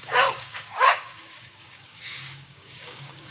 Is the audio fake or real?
fake